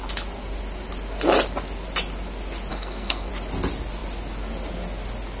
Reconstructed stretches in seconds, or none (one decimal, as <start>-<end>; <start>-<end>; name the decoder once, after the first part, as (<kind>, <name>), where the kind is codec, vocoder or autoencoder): 2.7-3.3 (codec, SNAC)